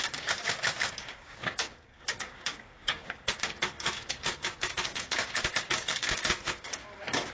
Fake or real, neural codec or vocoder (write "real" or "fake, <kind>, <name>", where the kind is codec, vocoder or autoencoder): fake, codec, DAC